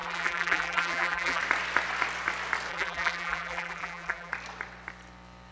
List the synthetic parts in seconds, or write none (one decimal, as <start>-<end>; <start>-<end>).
0.0-1.4; 2.7-4.3